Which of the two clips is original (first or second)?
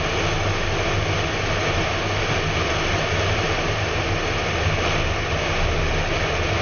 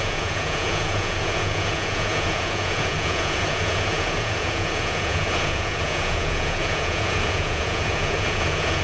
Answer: first